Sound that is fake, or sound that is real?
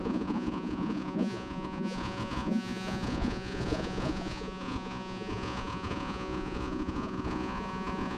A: fake